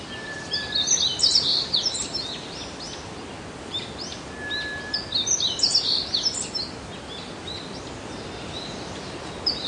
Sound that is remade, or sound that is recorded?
recorded